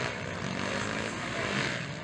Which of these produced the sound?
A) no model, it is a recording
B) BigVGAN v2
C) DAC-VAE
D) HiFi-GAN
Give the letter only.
A